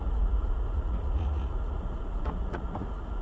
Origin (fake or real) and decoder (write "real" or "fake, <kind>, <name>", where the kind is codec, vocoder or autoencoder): fake, vocoder, Vocos